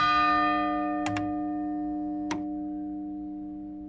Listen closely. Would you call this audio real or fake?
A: real